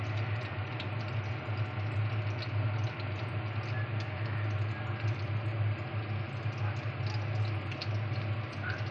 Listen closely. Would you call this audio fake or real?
real